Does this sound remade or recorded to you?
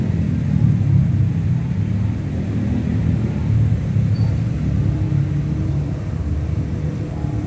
recorded